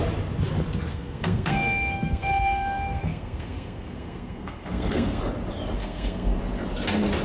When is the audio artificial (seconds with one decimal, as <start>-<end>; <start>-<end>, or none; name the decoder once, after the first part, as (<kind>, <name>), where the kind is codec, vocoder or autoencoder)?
0.9-5.2 (codec, SNAC); 5.8-6.4